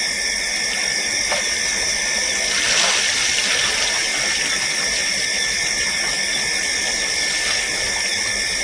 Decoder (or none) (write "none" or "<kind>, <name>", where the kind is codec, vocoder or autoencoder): none